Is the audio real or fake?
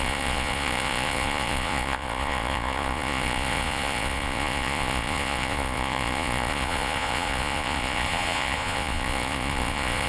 fake